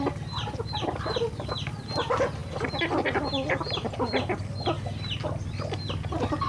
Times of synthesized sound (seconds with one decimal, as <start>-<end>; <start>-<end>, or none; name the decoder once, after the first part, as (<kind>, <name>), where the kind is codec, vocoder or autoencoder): none